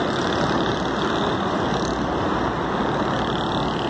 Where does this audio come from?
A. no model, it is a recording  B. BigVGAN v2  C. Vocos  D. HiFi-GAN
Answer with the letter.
A